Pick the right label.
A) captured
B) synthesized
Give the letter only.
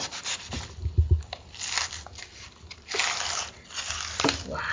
A